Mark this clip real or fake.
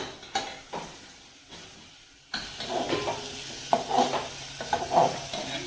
real